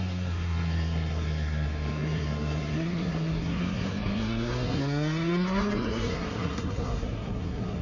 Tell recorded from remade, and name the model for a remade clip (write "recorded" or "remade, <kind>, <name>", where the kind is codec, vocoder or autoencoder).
remade, codec, SNAC